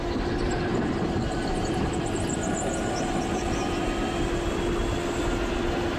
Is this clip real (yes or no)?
yes